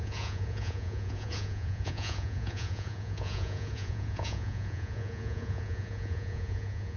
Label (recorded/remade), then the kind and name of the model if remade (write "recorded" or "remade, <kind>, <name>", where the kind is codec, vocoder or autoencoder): remade, vocoder, Vocos